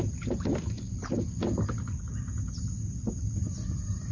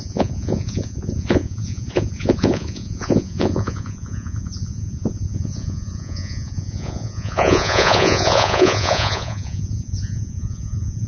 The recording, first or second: first